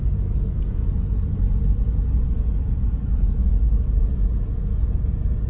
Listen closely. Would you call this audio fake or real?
fake